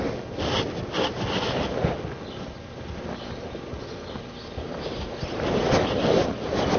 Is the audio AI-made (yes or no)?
no